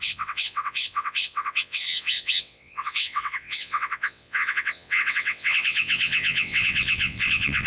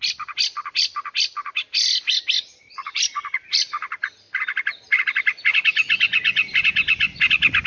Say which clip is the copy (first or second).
first